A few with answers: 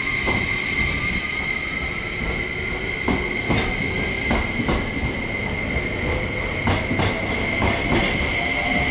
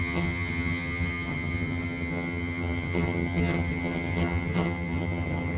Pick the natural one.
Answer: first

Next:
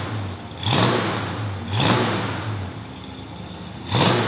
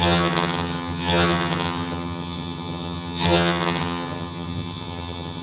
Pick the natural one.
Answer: first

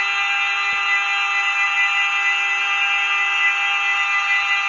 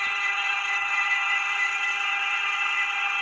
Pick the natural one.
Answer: first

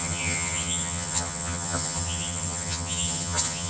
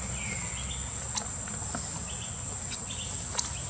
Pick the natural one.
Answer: second